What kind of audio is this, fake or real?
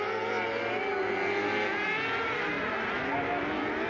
real